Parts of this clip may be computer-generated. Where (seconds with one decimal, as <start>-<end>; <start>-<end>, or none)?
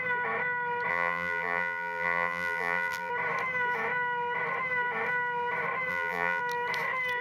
0.9-3.1; 5.9-6.4